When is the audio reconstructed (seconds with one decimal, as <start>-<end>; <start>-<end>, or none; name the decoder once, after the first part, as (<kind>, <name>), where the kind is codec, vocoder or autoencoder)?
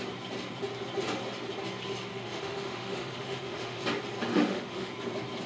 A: 2.1-3.8 (autoencoder, DAC-VAE); 4.3-4.9